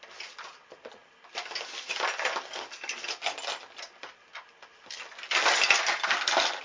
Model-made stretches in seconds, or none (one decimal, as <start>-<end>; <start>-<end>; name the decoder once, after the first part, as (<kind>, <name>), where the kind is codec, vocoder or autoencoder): none